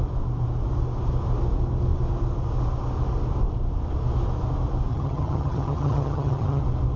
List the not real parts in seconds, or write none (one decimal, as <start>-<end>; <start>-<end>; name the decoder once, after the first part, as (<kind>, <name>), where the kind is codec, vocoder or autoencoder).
4.9-6.6 (vocoder, HiFi-GAN)